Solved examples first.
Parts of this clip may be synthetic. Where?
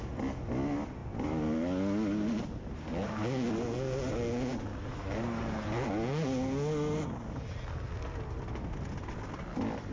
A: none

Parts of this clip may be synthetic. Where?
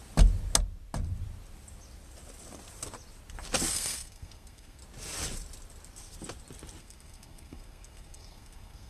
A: 3.7-4.8 (codec, SNAC); 6.8-8.9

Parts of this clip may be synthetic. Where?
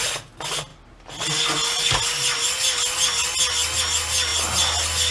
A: none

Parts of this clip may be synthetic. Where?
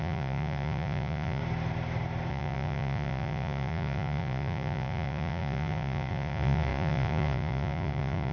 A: 0.0-1.4 (vocoder, Vocos); 2.3-8.3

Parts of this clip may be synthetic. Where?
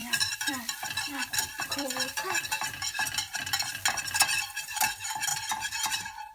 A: 0.0-3.7 (vocoder, BigVGAN v2)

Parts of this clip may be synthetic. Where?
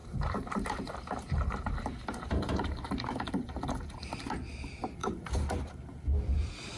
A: 0.0-4.1 (vocoder, BigVGAN v2); 5.0-5.5